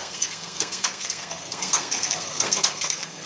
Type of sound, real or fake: fake